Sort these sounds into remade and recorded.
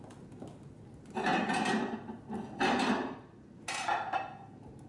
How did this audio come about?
recorded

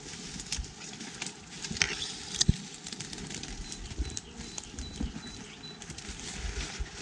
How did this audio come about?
recorded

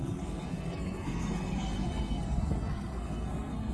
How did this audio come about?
remade